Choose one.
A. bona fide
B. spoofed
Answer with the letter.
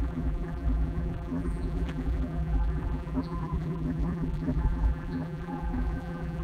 B